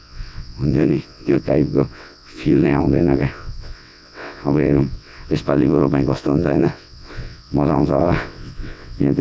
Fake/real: fake